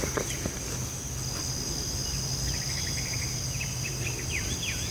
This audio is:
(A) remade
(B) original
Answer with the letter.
B